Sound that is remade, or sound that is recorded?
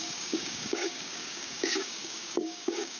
remade